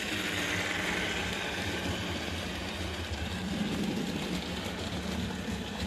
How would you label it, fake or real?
real